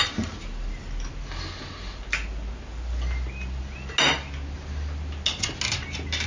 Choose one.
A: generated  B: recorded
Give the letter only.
B